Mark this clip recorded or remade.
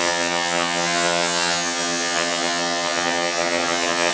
remade